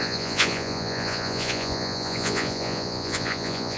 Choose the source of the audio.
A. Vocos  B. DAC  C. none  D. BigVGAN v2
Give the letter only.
A